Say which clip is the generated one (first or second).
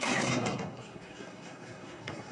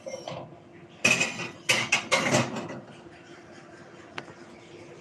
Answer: first